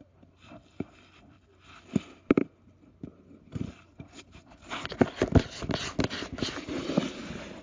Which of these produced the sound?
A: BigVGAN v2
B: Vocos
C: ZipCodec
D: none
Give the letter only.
D